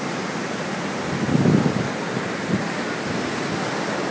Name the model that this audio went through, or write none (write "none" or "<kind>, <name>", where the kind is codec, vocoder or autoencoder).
none